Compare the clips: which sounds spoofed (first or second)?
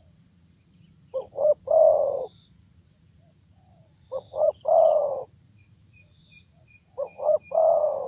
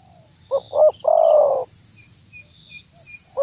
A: first